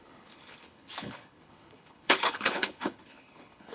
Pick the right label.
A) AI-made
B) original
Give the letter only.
A